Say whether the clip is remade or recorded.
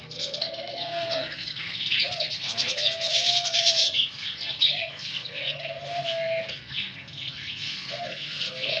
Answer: remade